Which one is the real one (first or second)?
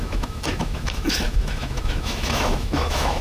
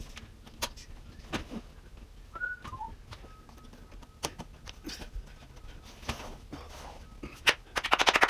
second